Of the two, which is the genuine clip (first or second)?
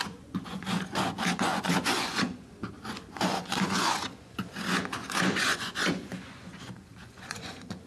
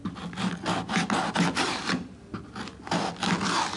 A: second